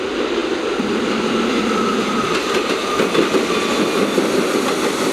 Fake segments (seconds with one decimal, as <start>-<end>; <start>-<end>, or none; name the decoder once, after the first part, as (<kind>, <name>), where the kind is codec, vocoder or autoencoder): 0.4-3.5 (vocoder, BigVGAN v2)